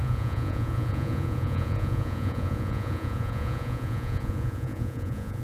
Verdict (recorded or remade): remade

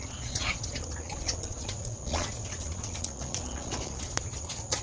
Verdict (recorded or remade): remade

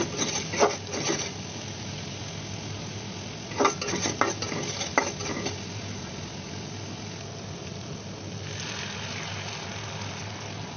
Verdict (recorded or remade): recorded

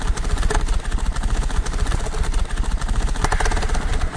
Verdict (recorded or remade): recorded